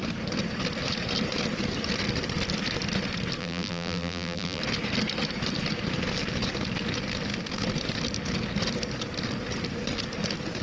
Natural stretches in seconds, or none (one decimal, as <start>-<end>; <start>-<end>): 0.0-3.4; 4.6-10.6